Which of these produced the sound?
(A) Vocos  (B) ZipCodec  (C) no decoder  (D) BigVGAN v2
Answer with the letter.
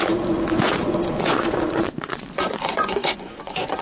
A